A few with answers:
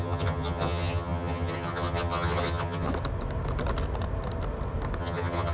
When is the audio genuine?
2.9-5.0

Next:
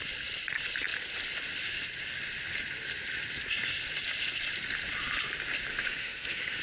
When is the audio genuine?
0.0-5.7